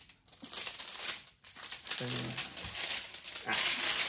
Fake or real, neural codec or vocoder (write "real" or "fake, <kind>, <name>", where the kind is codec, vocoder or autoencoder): real